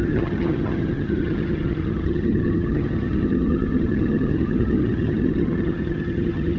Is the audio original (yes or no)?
no